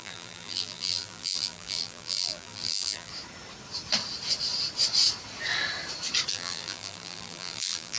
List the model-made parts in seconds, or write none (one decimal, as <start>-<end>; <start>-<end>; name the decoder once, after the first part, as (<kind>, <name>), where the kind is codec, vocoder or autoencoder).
0.0-3.1 (vocoder, BigVGAN v2); 6.3-8.0